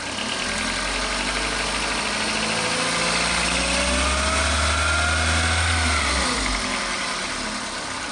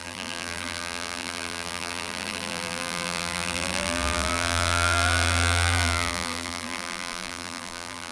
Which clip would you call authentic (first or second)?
first